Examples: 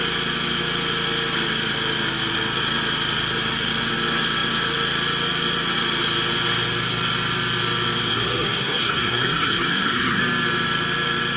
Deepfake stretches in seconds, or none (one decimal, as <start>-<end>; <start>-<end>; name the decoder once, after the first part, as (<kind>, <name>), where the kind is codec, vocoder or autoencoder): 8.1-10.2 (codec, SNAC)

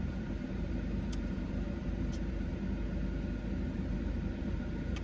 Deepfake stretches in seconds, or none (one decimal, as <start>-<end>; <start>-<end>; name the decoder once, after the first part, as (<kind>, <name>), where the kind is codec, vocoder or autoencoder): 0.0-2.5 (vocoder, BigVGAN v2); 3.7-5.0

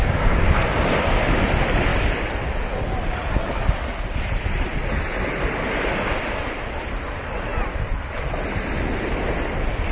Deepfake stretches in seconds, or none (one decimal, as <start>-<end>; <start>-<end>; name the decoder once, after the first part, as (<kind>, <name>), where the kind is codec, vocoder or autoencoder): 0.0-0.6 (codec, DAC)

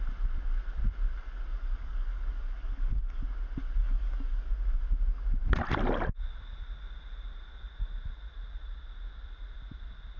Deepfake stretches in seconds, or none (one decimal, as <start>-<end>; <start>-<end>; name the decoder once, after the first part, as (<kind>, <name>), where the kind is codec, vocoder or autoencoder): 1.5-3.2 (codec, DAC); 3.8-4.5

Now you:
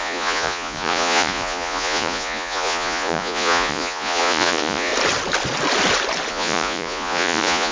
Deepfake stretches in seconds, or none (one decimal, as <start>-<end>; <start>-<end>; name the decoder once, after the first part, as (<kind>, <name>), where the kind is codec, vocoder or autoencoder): 0.0-4.9 (vocoder, Vocos); 6.3-7.7

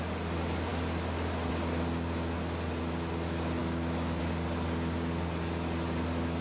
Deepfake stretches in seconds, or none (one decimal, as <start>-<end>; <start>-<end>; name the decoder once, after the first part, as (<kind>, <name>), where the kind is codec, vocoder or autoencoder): 3.6-4.2 (autoencoder, DAC-VAE)

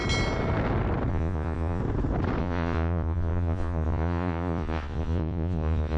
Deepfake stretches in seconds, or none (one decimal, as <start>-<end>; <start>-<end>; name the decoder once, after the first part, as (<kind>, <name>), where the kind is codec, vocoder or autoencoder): 1.1-1.8 (vocoder, Vocos); 2.4-6.0

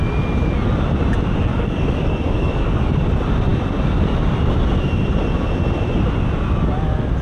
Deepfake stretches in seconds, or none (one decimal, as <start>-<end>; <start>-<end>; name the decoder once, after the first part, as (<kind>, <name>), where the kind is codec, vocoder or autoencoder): 1.5-3.0 (codec, DAC)